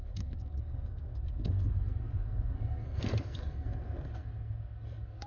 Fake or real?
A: fake